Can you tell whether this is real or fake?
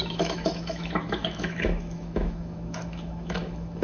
fake